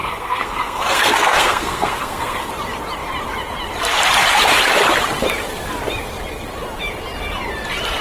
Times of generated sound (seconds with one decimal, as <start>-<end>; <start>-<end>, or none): 0.0-2.5